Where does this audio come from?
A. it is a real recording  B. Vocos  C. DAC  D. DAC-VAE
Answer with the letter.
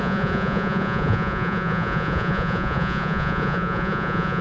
B